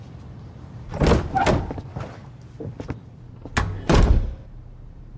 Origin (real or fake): real